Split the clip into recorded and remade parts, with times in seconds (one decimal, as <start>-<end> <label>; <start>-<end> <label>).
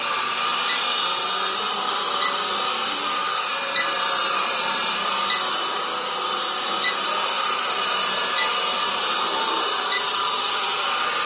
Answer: 0.0-11.3 recorded